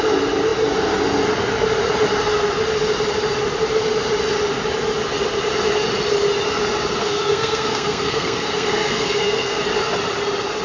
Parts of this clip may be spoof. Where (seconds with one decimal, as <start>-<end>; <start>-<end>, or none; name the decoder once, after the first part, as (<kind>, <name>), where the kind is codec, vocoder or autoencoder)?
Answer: 7.0-9.6 (codec, SNAC)